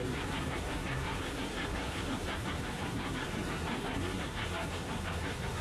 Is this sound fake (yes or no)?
yes